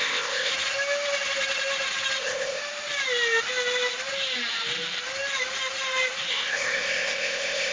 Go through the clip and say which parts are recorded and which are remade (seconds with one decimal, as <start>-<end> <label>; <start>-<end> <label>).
0.0-0.5 remade; 0.5-2.2 recorded; 2.2-2.6 remade; 2.6-6.3 recorded; 6.3-7.7 remade